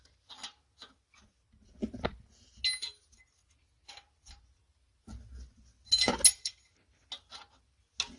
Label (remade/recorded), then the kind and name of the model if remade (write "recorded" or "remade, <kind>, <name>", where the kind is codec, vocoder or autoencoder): recorded